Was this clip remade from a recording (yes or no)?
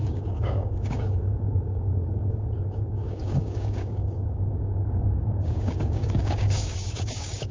yes